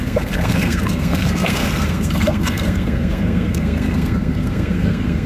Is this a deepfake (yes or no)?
yes